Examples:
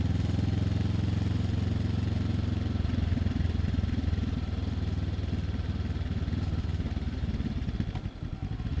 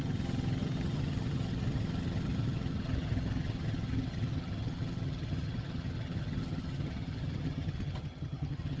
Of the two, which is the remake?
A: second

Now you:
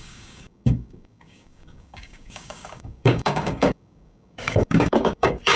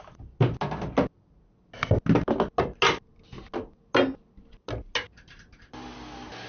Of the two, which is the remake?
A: first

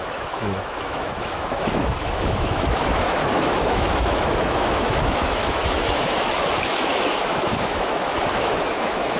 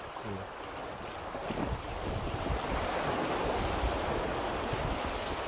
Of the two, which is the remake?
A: first